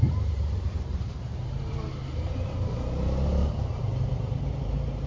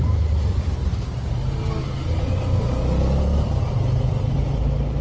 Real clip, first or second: second